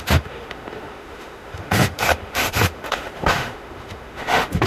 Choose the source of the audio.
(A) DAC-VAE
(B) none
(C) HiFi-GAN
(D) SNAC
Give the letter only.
A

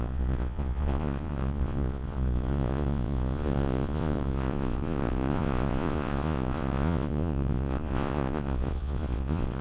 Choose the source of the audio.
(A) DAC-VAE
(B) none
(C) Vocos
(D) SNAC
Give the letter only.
C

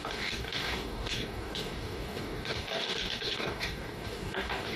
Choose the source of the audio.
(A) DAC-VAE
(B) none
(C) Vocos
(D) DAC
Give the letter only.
D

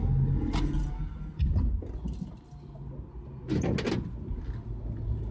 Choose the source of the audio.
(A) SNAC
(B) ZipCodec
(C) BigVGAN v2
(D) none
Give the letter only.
D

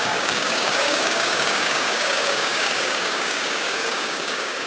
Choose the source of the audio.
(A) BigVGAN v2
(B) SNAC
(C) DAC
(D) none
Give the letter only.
C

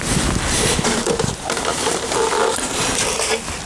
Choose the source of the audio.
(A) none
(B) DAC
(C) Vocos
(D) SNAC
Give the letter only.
A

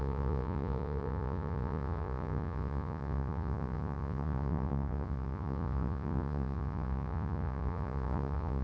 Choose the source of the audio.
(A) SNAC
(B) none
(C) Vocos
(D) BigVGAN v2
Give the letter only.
C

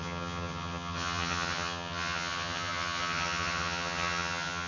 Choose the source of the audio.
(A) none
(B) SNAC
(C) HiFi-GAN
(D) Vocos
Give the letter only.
C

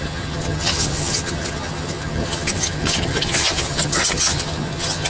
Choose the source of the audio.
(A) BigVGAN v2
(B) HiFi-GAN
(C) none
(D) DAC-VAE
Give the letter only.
B